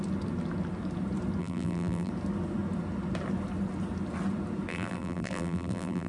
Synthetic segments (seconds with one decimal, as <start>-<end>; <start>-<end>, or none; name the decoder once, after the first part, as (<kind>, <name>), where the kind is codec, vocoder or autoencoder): 1.4-2.1 (vocoder, BigVGAN v2); 4.7-6.1